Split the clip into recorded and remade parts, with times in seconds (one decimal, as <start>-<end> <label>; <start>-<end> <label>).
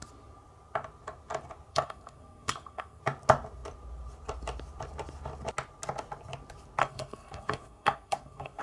0.0-1.7 recorded; 1.7-3.0 remade; 3.0-6.8 recorded; 6.8-8.6 remade